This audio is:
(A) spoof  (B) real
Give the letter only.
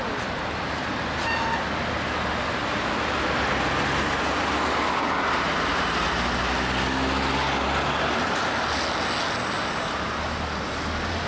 B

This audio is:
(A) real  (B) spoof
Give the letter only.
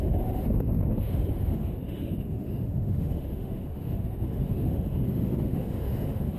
B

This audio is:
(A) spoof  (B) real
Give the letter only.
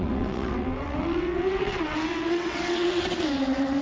A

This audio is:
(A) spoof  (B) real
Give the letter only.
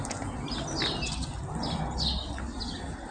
B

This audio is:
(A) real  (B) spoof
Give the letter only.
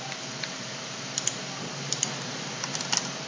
A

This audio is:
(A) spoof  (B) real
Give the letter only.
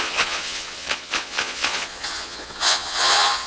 A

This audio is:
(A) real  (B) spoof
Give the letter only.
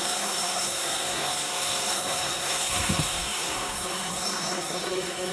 B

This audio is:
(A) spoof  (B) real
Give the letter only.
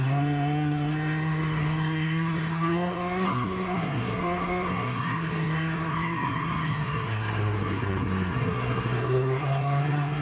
A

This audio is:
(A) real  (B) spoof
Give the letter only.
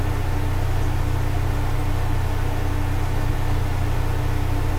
A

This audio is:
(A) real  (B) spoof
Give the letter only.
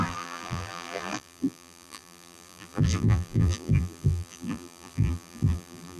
B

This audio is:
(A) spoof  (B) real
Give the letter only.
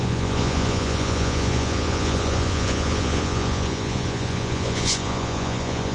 A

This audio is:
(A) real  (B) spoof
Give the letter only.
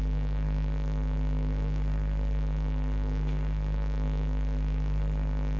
B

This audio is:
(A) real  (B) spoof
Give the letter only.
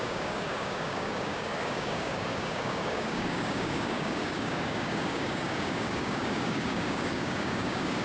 B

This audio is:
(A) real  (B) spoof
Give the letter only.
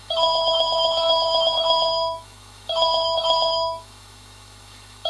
B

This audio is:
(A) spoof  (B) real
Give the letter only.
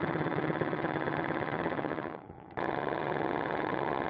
A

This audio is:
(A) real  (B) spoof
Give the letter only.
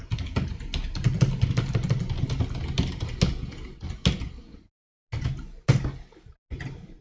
A